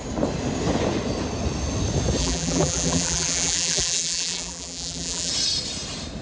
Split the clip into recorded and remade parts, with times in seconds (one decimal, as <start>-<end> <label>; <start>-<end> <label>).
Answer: 0.0-2.2 recorded; 2.2-5.3 remade; 5.3-6.2 recorded